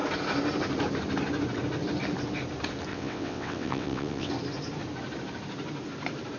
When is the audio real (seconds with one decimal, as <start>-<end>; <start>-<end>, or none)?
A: 0.0-2.9; 4.3-6.4